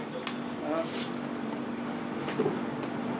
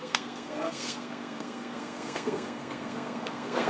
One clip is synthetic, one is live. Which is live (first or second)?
first